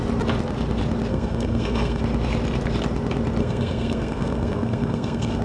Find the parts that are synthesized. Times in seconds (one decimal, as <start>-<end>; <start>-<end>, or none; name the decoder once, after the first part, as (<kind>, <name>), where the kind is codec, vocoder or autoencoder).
1.1-2.0 (codec, SNAC); 3.4-5.4